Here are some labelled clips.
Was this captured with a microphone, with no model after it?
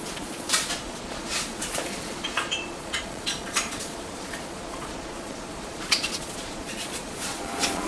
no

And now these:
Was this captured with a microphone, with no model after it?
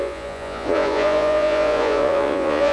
no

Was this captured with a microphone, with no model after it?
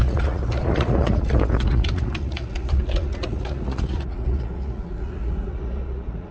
no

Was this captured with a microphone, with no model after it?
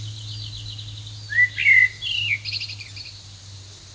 yes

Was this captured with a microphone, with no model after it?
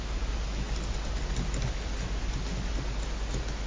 yes